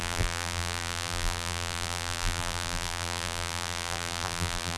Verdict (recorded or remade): remade